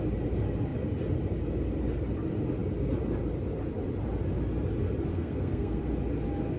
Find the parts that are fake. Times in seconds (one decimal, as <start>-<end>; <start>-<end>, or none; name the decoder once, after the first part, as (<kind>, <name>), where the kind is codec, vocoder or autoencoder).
5.1-5.8 (codec, SNAC)